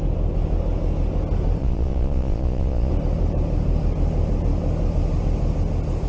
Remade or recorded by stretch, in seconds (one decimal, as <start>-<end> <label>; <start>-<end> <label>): 0.0-1.6 recorded; 1.6-2.9 remade; 2.9-6.1 recorded